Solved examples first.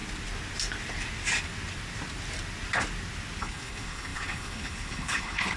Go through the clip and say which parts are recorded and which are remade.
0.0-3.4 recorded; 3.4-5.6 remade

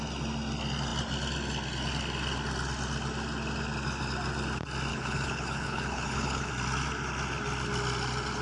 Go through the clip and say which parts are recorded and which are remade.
0.0-4.9 recorded; 4.9-6.5 remade; 6.5-8.4 recorded

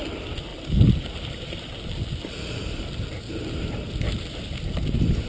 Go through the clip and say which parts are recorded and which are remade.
0.0-5.3 recorded

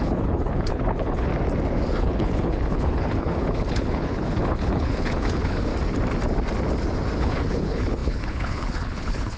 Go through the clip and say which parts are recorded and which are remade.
0.0-1.3 remade; 1.3-2.0 recorded; 2.0-5.7 remade; 5.7-7.2 recorded; 7.2-9.4 remade

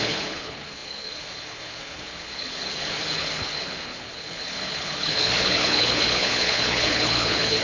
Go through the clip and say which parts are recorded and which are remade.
0.0-7.6 remade

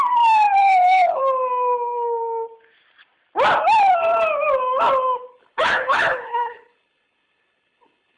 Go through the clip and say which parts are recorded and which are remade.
0.0-0.6 recorded; 0.6-1.2 remade; 1.2-5.3 recorded; 5.3-8.2 remade

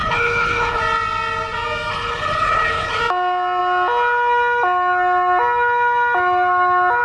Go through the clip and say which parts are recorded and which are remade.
0.0-0.8 remade; 0.8-1.9 recorded; 1.9-3.0 remade; 3.0-7.0 recorded